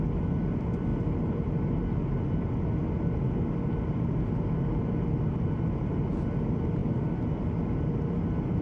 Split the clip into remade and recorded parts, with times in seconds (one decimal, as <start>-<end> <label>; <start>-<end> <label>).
0.0-8.6 recorded